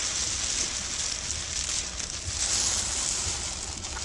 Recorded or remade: recorded